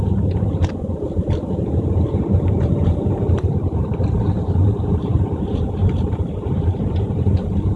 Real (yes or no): no